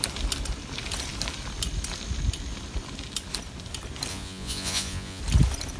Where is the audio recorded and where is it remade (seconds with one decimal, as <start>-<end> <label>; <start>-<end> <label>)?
0.0-4.1 recorded; 4.1-5.2 remade; 5.2-5.8 recorded